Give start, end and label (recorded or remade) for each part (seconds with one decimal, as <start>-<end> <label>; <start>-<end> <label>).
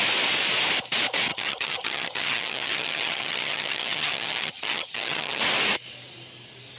0.0-1.3 recorded; 1.3-5.4 remade; 5.4-6.8 recorded